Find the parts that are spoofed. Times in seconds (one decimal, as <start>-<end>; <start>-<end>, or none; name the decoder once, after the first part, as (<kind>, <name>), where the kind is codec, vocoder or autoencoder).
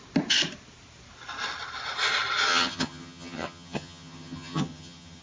2.5-5.2 (vocoder, HiFi-GAN)